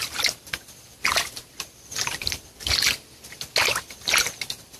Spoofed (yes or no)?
no